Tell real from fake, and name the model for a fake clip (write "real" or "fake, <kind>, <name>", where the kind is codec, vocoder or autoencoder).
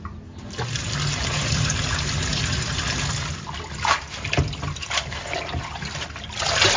real